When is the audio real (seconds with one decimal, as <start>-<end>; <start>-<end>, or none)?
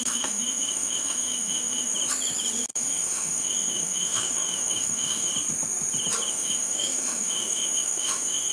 1.9-2.7; 5.3-6.3